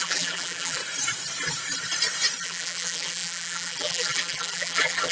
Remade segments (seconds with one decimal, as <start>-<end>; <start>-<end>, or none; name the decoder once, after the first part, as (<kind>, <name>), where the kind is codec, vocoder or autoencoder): 0.0-0.8 (vocoder, BigVGAN v2); 2.4-5.1